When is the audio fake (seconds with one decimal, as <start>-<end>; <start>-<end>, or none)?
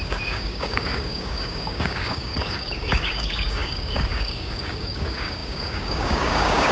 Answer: 0.0-6.7